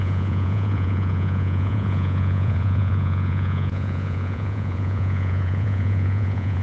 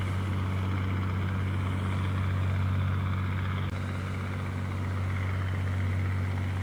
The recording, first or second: second